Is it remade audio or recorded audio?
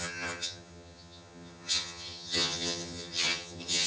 remade